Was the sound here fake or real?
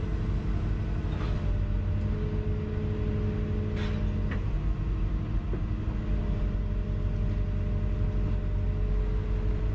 real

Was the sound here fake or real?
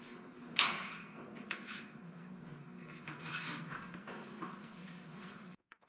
fake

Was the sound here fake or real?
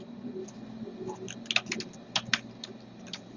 real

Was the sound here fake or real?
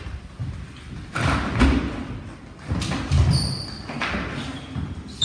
real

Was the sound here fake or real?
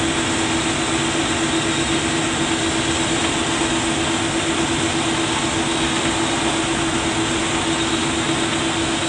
real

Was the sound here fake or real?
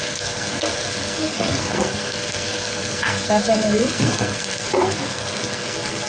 fake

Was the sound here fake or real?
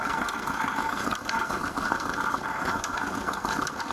fake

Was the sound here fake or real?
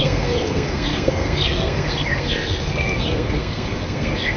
fake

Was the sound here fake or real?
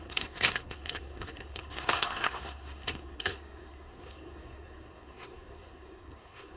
fake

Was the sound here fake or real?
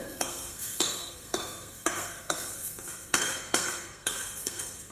fake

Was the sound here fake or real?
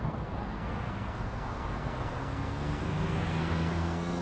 fake